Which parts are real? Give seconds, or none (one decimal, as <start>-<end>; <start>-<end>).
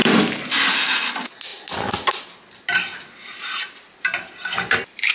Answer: 0.5-3.2